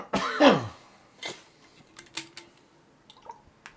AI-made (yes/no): no